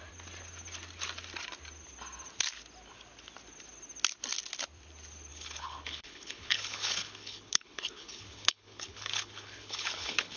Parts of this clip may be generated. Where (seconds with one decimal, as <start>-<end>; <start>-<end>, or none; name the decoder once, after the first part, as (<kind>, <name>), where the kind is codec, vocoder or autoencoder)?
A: 5.3-10.4 (codec, HILCodec)